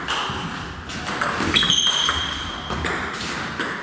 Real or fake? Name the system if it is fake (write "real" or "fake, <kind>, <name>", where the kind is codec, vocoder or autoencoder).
real